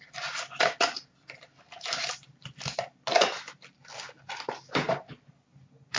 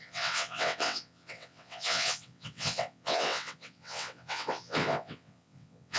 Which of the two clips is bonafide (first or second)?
first